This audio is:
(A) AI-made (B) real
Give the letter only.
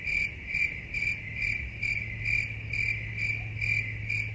B